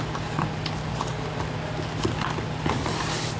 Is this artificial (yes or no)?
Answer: no